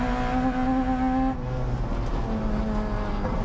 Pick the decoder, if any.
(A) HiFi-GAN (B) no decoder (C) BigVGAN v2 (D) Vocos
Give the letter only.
B